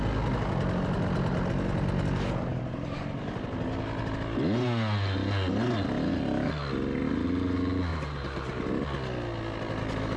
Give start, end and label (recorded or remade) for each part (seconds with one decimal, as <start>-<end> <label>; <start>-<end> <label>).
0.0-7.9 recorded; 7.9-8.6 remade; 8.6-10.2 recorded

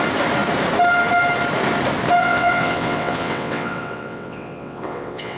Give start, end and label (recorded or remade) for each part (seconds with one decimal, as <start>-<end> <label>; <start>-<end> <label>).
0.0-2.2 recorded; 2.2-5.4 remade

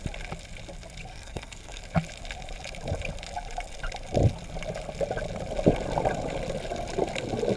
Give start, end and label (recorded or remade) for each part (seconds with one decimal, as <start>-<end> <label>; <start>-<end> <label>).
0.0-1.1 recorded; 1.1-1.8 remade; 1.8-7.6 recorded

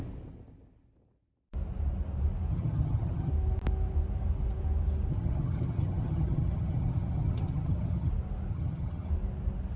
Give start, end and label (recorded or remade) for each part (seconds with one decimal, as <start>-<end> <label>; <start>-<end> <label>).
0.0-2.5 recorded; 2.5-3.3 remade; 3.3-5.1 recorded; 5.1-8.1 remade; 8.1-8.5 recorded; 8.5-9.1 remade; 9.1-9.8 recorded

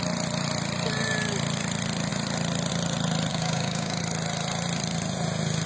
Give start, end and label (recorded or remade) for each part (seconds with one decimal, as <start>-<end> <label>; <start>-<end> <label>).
0.0-3.3 recorded; 3.3-4.0 remade; 4.0-5.7 recorded

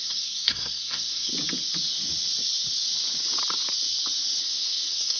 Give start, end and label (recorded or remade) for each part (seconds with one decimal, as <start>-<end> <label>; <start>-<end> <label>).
0.0-1.3 remade; 1.3-4.4 recorded; 4.4-5.2 remade

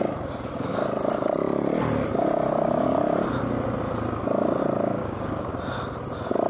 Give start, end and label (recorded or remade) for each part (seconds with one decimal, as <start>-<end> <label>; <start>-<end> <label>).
0.0-5.0 recorded; 5.0-5.5 remade; 5.5-6.5 recorded

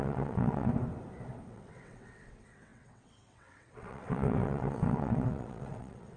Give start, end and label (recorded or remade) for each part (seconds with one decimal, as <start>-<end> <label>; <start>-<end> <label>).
0.0-0.7 remade; 0.7-1.5 recorded; 1.5-6.2 remade